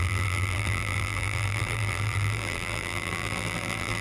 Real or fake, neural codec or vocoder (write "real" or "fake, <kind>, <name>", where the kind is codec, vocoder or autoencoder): fake, vocoder, BigVGAN v2